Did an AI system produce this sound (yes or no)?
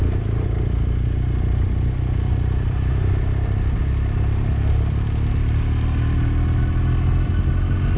no